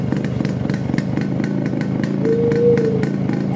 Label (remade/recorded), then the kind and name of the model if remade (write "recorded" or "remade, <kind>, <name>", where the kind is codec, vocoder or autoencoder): recorded